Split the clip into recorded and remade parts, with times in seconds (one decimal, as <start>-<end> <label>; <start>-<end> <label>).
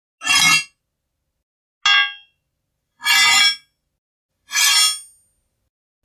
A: 0.0-6.0 recorded